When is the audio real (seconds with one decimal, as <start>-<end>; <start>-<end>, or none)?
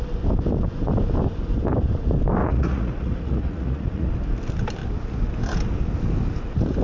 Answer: 0.0-2.4; 4.1-6.8